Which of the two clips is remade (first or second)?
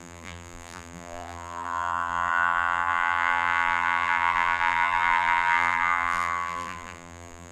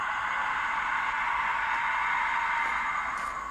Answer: first